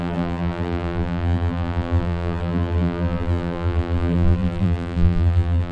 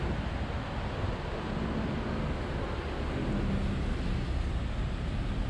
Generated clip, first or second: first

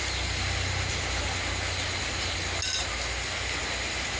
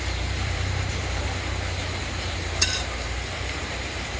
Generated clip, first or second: second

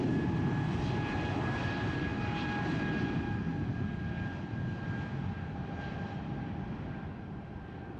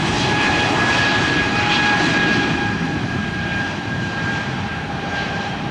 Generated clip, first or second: second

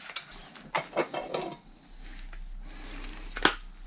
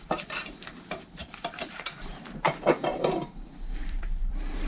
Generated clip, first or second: second